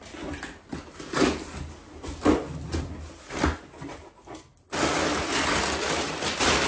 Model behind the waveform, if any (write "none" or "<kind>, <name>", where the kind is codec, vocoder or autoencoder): none